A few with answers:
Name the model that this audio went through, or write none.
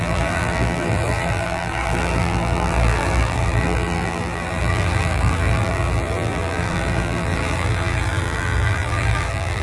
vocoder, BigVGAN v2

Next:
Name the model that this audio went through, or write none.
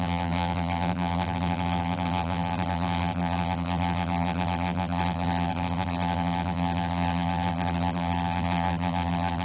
vocoder, BigVGAN v2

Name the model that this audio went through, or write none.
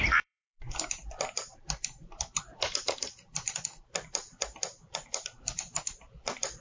vocoder, BigVGAN v2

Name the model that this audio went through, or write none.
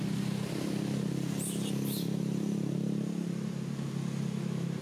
none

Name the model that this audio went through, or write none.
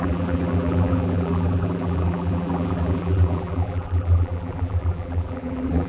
vocoder, BigVGAN v2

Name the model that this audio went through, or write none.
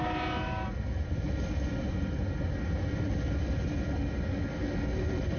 none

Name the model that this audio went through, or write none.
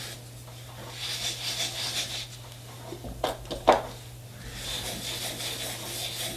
none